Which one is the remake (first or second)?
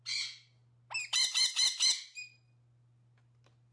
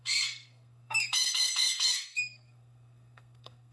second